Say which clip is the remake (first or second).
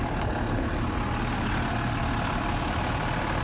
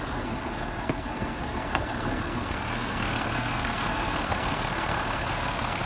second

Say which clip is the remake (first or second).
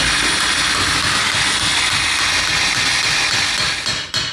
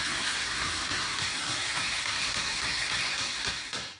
second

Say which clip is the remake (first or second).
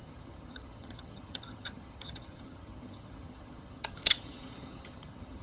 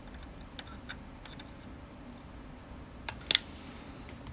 first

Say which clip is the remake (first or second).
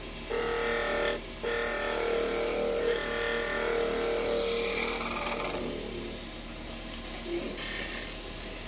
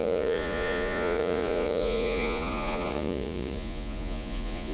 second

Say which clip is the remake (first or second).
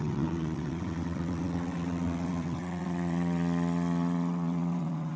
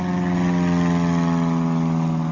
first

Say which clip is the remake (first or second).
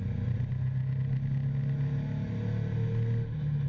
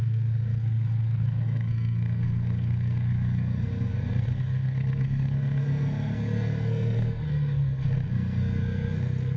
second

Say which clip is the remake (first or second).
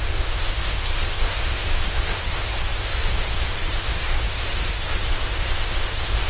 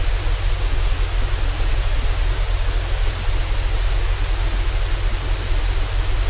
first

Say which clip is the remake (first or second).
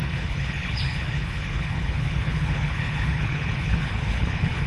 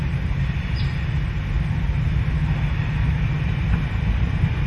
first